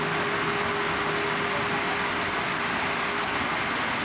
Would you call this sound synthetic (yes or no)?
no